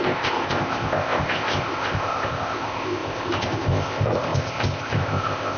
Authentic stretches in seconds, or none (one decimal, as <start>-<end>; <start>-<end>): none